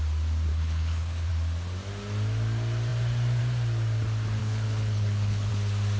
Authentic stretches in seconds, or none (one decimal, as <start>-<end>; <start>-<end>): 0.0-0.5; 1.3-4.4; 5.5-6.0

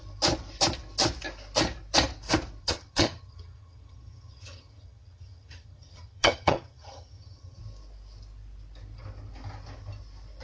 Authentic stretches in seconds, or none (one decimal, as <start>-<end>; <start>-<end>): 0.0-2.6; 7.6-10.4

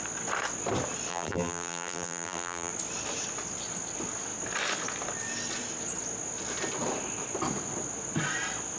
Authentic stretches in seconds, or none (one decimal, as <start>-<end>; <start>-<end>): 0.0-1.1; 2.7-8.8

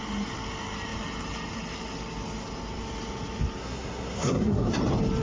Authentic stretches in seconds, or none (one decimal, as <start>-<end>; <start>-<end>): 0.0-3.6; 4.7-5.2

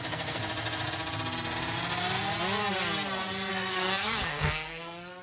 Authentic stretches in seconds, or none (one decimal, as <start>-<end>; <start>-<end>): 0.4-3.5

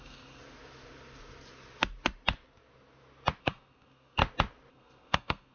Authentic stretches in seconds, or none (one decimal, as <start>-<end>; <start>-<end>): 0.4-3.4; 4.2-4.7

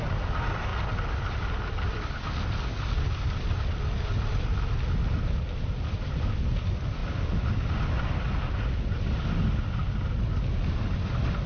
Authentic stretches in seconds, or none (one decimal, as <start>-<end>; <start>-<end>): 0.0-11.5